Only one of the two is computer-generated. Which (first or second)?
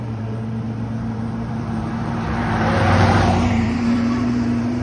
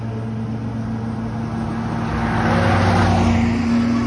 first